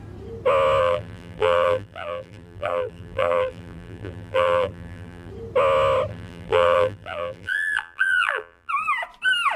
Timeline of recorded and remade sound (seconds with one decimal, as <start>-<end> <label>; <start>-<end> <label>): 0.0-0.8 recorded; 0.8-5.3 remade; 5.3-6.1 recorded; 6.1-8.7 remade; 8.7-9.6 recorded